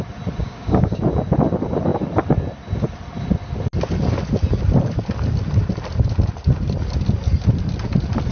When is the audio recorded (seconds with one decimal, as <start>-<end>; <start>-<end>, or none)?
0.0-0.4; 1.0-8.3